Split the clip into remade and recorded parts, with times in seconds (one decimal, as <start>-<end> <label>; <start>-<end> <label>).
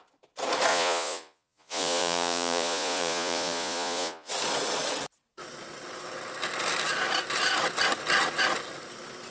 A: 0.0-0.7 recorded; 0.7-4.3 remade; 4.3-9.3 recorded